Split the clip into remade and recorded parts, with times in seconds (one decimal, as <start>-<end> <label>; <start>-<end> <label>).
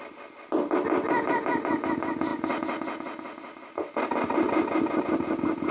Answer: 0.0-5.7 recorded